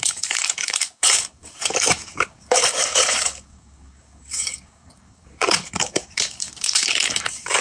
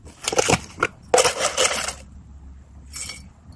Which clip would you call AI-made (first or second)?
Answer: first